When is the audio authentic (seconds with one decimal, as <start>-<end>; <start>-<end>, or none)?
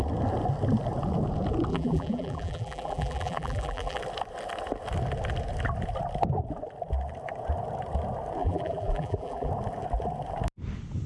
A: 0.0-1.7; 4.0-8.4; 9.5-11.1